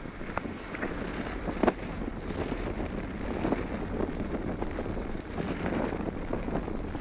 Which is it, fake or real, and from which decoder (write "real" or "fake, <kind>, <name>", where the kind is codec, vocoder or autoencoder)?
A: real